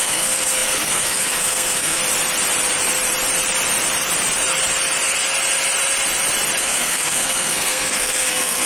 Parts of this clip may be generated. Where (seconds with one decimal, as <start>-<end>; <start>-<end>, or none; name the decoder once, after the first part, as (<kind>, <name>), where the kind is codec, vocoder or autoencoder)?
0.0-2.0 (codec, SNAC); 6.6-8.7